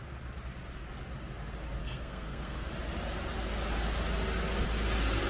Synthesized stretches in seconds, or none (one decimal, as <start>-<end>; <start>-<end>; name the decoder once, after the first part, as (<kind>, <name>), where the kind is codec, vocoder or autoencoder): 1.8-2.7 (codec, SNAC)